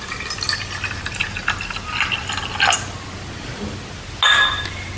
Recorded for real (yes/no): yes